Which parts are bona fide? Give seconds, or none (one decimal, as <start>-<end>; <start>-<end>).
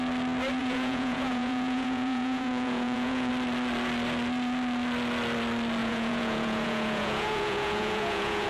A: 0.0-0.6; 3.3-5.8